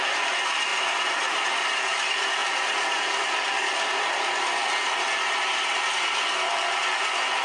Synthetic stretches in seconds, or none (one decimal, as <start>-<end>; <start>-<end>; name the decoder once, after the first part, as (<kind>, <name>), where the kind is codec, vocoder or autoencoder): 0.7-1.7 (vocoder, BigVGAN v2); 2.4-3.5